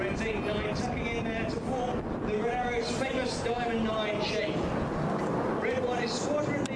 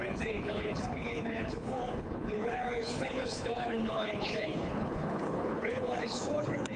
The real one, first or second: first